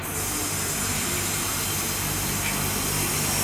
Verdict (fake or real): real